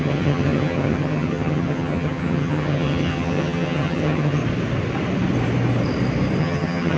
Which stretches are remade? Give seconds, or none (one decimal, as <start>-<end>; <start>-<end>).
0.0-4.4; 6.4-7.0